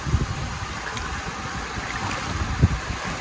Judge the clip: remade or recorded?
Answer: recorded